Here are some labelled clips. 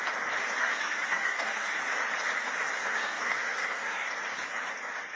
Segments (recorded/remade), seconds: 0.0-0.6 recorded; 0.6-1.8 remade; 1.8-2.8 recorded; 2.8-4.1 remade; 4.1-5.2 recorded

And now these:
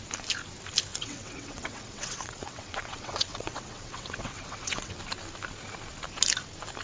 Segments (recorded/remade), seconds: 0.0-0.9 recorded; 0.9-5.0 remade; 5.0-6.8 recorded